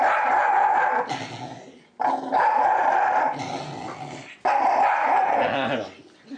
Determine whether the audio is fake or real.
real